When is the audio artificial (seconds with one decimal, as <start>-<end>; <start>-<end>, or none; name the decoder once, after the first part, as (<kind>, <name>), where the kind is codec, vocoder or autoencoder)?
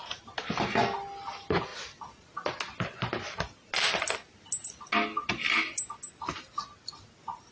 none